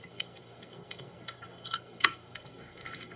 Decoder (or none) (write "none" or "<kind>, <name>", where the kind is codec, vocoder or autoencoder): codec, SNAC